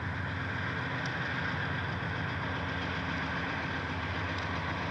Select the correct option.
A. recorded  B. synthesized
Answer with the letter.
A